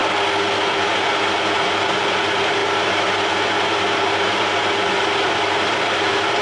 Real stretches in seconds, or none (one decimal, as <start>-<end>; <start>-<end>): 0.0-0.6